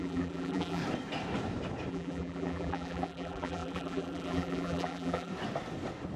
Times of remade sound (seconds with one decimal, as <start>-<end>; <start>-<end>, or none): 0.0-0.8; 1.9-5.3